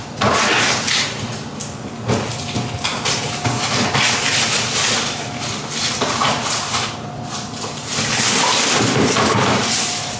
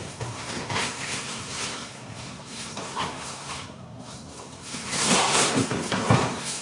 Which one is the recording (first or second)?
first